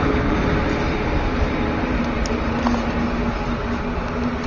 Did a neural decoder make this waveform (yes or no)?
no